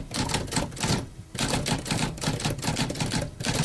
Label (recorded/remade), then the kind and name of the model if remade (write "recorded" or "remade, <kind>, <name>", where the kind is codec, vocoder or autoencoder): recorded